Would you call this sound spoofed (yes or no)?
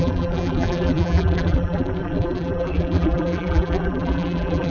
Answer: yes